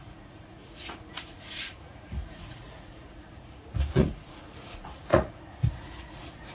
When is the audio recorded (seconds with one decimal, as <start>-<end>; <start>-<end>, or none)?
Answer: none